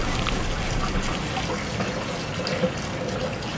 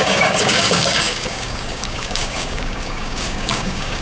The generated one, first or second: second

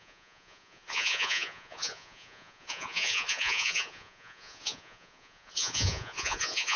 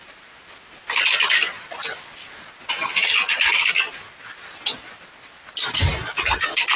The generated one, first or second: first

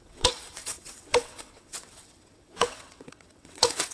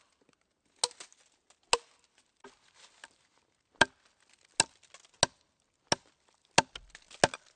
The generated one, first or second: first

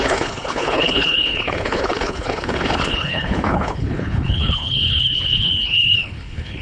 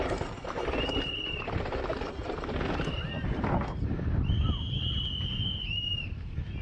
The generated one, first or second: first